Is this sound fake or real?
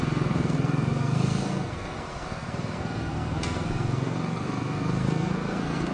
fake